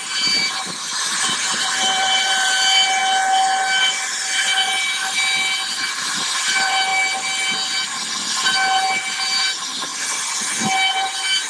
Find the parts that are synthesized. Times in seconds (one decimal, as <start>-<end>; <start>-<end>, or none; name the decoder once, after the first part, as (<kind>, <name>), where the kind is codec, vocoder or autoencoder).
0.0-3.0 (vocoder, BigVGAN v2); 3.8-4.5; 5.9-6.9; 9.1-9.9; 10.9-11.5